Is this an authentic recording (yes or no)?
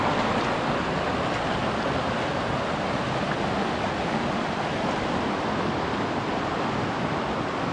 yes